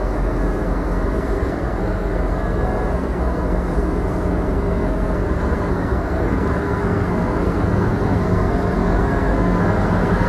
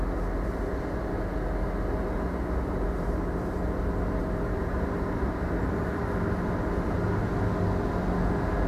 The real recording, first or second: second